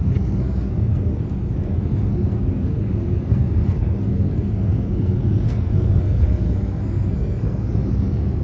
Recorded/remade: remade